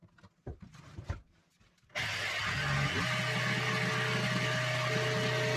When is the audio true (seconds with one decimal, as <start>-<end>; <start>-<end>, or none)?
0.0-5.6